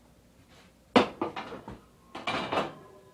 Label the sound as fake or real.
real